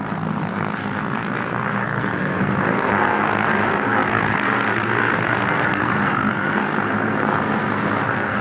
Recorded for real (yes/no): no